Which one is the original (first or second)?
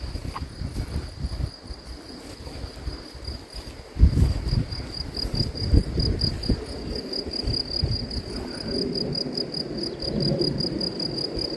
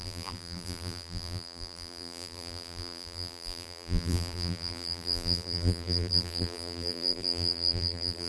first